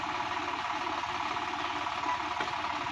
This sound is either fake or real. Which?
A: real